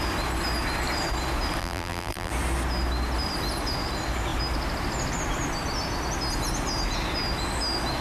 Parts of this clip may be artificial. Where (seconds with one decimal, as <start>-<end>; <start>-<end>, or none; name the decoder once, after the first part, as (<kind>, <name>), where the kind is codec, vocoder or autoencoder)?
1.6-2.3 (vocoder, BigVGAN v2)